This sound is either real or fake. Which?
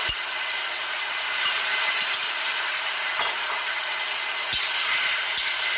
real